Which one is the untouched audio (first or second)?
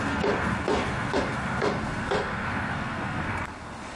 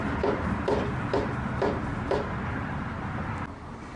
second